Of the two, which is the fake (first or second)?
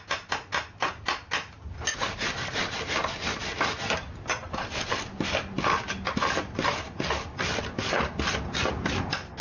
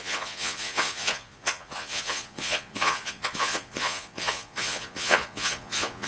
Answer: second